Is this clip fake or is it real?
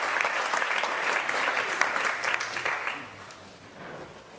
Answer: real